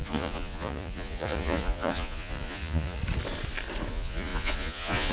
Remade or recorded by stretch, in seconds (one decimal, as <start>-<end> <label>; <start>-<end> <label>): 0.0-3.0 remade; 3.0-3.9 recorded; 3.9-5.1 remade